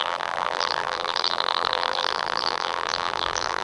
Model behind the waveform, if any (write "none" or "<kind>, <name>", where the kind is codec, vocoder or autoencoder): vocoder, BigVGAN v2